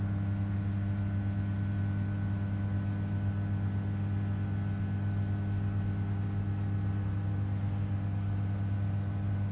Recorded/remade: recorded